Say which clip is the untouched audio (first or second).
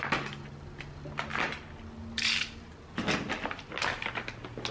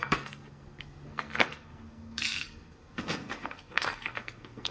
first